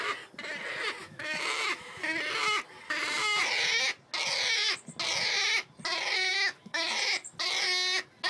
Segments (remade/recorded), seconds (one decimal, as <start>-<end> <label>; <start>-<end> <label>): 0.0-1.0 recorded; 1.0-2.0 remade; 2.0-6.3 recorded; 6.3-6.9 remade; 6.9-8.3 recorded